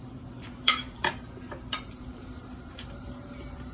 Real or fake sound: fake